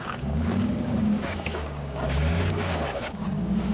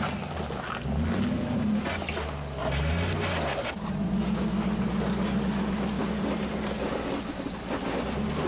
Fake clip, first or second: first